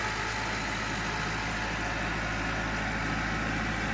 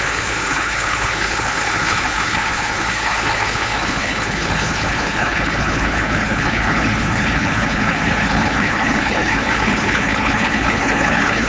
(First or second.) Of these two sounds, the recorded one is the first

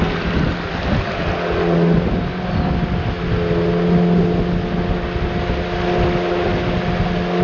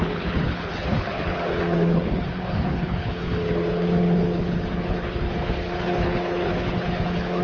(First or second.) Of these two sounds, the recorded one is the first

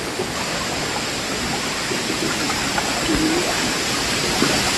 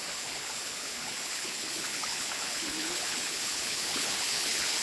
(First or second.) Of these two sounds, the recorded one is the first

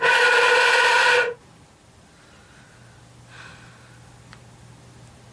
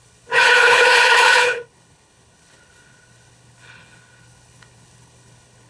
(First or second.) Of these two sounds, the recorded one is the first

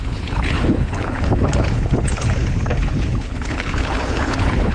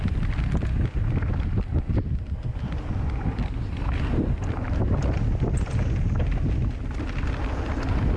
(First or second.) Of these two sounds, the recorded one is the second